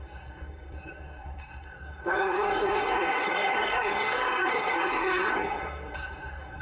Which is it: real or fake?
fake